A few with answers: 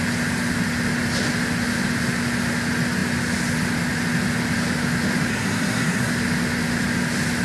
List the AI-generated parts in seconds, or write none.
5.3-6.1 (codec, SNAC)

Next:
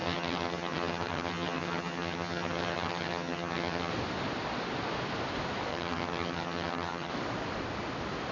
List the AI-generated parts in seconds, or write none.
0.0-3.9 (vocoder, HiFi-GAN); 5.7-7.1

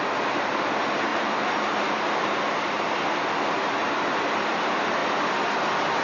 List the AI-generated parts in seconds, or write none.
1.1-2.8 (vocoder, BigVGAN v2); 3.8-4.6

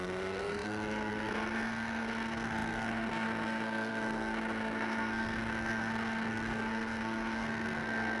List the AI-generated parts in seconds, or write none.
0.0-8.2 (codec, SNAC)

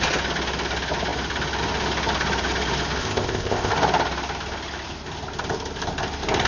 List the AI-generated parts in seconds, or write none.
3.0-3.7 (codec, ZipCodec)

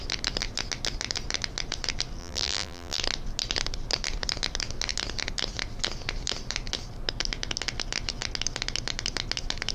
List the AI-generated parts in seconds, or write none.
2.2-3.0 (vocoder, BigVGAN v2)

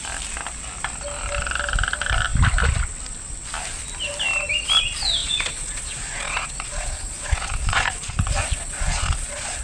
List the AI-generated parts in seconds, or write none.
5.2-9.6 (vocoder, Vocos)

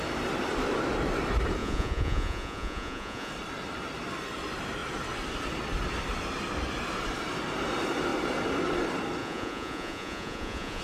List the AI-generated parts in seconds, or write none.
1.6-3.3 (vocoder, Vocos); 9.2-10.8